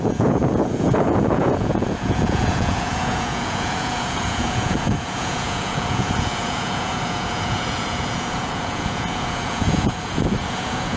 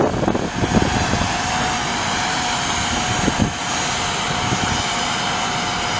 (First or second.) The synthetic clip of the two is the first